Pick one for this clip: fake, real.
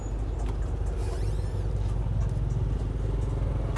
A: real